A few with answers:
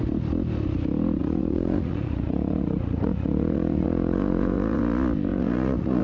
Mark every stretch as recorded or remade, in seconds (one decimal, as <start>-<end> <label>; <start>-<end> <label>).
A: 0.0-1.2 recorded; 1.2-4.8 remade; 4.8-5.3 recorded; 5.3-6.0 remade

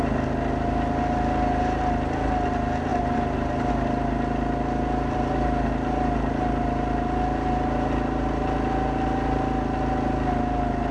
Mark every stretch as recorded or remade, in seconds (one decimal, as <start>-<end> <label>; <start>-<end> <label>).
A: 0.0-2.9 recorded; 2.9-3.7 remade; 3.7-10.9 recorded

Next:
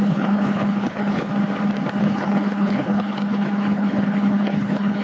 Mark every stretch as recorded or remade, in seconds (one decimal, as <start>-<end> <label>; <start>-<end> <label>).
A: 0.0-1.3 remade; 1.3-2.0 recorded; 2.0-5.0 remade

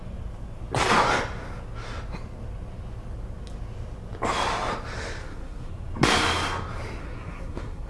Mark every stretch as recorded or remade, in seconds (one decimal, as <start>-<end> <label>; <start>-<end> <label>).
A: 0.0-5.2 recorded; 5.2-5.7 remade; 5.7-7.0 recorded; 7.0-7.9 remade

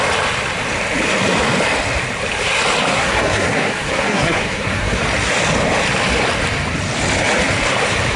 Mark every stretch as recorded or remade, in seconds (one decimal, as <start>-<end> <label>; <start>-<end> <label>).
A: 0.0-2.9 recorded; 2.9-5.0 remade; 5.0-8.2 recorded

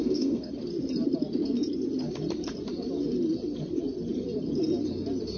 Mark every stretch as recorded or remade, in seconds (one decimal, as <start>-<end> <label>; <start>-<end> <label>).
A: 0.0-0.5 remade; 0.5-5.4 recorded

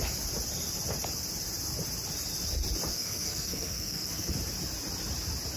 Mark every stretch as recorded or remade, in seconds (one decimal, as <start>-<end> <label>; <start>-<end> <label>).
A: 0.0-2.9 recorded; 2.9-4.3 remade; 4.3-5.6 recorded